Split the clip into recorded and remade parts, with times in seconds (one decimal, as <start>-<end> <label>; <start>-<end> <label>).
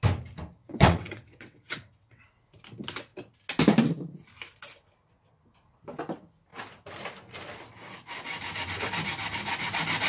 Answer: 0.0-0.6 recorded; 0.6-2.2 remade; 2.2-10.1 recorded